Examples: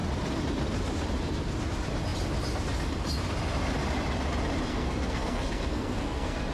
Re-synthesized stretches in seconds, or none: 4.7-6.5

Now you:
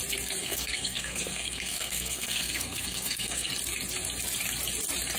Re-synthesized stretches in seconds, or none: 0.4-3.5